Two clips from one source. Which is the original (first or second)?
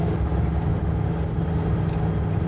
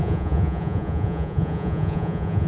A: first